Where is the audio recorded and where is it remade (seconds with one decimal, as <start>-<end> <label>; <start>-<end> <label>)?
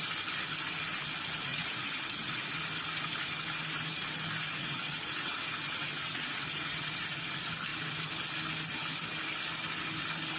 0.0-1.5 recorded; 1.5-2.6 remade; 2.6-4.6 recorded; 4.6-6.9 remade; 6.9-10.4 recorded